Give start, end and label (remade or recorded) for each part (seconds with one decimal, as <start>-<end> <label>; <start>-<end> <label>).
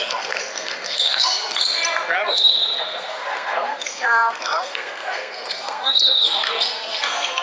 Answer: 0.0-1.8 remade; 1.8-2.3 recorded; 2.3-7.4 remade